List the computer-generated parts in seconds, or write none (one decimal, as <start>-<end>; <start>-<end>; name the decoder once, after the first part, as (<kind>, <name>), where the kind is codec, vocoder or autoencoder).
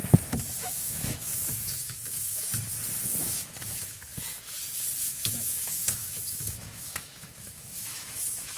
0.6-2.5 (autoencoder, DAC-VAE); 3.2-4.1; 5.0-8.6